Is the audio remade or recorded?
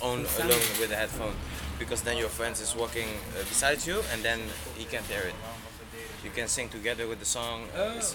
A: recorded